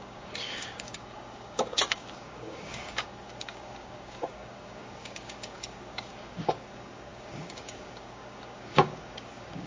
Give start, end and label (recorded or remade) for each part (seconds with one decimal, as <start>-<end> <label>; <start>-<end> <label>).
0.0-9.7 remade